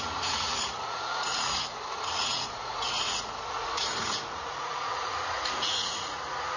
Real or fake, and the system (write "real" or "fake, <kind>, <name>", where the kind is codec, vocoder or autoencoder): fake, vocoder, Vocos